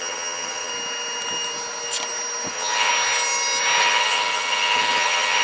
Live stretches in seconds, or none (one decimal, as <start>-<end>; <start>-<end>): 0.7-2.5; 2.9-3.8

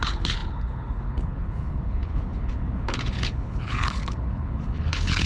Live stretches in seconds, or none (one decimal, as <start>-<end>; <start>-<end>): none

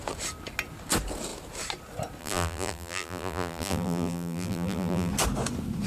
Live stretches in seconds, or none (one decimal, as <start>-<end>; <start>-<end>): 0.0-2.2; 5.1-5.9

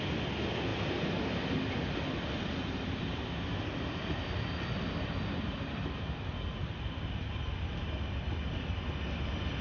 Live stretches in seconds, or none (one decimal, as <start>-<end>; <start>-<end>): 0.0-9.6

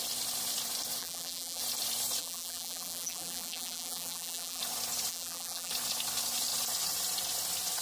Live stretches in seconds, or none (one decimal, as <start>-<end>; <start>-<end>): 0.0-1.0; 1.6-2.2; 4.6-5.1; 5.7-7.8

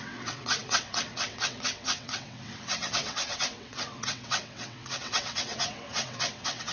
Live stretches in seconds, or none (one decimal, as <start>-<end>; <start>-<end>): none